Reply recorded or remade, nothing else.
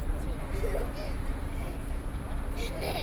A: recorded